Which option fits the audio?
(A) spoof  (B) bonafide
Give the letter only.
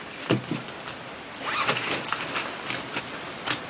B